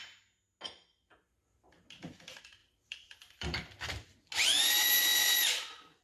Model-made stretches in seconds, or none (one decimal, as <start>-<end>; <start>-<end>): 2.6-3.7